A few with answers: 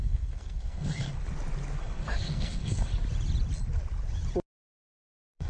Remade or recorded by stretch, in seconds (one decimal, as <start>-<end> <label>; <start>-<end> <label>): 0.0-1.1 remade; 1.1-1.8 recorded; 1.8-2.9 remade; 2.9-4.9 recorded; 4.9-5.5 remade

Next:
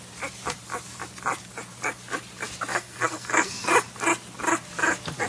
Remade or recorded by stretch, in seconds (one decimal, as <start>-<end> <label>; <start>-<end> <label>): 0.0-2.7 recorded; 2.7-3.7 remade; 3.7-5.3 recorded

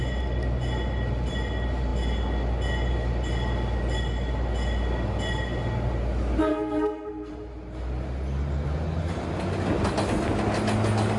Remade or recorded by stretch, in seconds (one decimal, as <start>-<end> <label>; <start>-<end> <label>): 0.0-6.5 recorded; 6.5-7.3 remade; 7.3-11.2 recorded

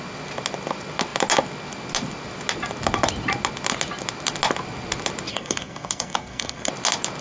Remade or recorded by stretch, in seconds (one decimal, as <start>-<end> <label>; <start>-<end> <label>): 0.0-5.3 recorded; 5.3-6.7 remade; 6.7-7.2 recorded

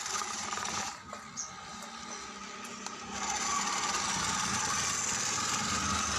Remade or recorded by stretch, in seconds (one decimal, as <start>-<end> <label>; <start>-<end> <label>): 0.0-6.2 recorded